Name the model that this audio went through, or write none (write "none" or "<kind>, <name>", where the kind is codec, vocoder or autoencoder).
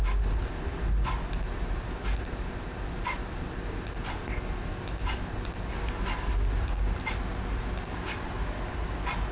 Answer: none